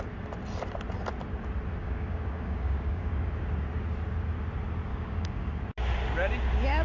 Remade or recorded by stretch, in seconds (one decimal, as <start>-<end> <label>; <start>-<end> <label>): 0.0-1.8 recorded; 1.8-3.3 remade; 3.3-4.9 recorded; 4.9-5.6 remade; 5.6-6.8 recorded